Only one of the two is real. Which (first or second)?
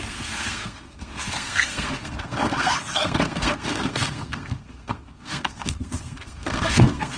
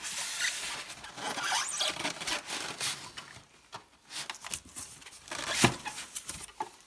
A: second